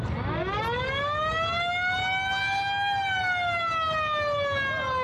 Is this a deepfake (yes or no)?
no